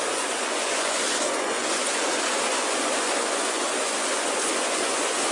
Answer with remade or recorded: remade